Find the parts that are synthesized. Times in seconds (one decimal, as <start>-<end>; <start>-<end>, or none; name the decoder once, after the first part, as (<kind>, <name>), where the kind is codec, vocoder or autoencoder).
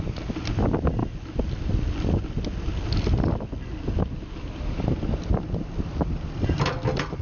none